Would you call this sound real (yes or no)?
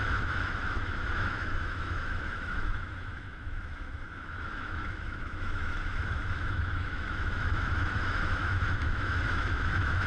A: no